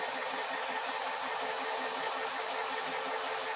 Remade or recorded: recorded